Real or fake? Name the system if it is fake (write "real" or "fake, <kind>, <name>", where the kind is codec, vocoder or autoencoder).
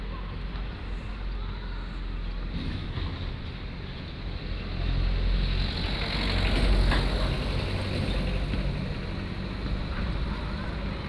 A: real